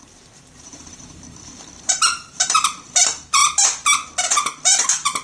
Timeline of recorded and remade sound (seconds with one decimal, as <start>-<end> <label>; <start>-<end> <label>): 0.0-3.4 remade; 3.4-4.8 recorded; 4.8-5.2 remade